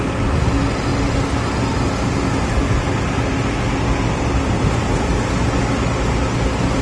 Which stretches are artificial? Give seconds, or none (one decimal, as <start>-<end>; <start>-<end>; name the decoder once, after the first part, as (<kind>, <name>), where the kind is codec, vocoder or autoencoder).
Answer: none